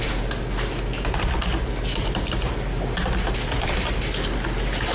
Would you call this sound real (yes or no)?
yes